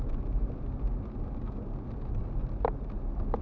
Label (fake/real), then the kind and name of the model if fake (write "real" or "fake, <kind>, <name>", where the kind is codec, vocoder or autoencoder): real